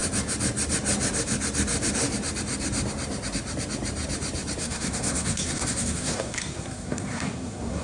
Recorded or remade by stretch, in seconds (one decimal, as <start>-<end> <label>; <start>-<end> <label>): 0.0-4.6 recorded; 4.6-7.8 remade